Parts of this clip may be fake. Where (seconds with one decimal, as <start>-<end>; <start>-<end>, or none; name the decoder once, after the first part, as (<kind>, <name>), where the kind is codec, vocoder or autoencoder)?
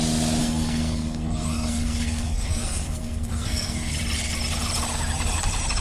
0.4-3.9 (codec, SNAC)